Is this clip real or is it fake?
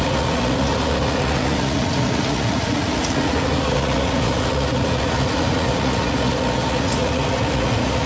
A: fake